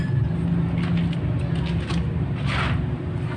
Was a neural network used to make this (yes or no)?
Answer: no